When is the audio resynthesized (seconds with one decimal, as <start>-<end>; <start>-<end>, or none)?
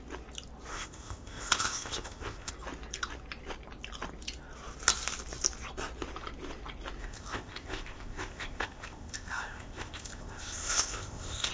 0.7-2.5; 7.0-11.5